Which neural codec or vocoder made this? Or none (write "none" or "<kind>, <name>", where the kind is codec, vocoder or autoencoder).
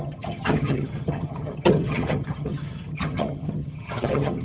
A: vocoder, HiFi-GAN